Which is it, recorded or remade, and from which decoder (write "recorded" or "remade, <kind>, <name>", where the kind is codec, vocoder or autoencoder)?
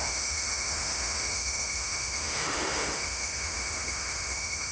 remade, autoencoder, DAC-VAE